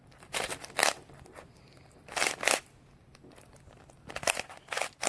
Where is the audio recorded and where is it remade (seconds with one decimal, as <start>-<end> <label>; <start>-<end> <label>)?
0.0-5.1 recorded